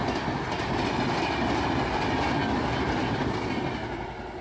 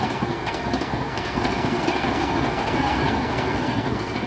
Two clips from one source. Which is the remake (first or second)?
second